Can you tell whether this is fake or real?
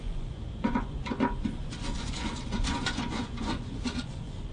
fake